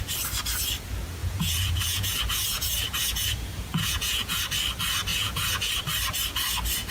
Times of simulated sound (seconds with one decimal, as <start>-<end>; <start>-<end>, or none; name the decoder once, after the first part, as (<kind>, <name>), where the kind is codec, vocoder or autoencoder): 1.2-4.4 (vocoder, Vocos); 5.1-5.7